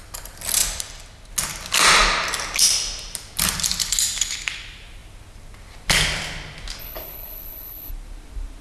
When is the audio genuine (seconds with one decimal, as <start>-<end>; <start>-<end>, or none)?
0.0-6.8; 7.9-8.6